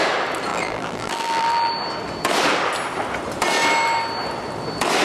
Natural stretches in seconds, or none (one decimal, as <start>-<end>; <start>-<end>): 0.0-0.5; 1.7-5.0